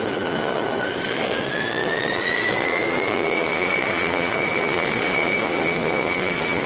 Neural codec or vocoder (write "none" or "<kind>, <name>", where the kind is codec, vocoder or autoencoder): vocoder, Vocos